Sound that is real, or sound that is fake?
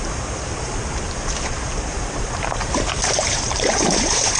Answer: fake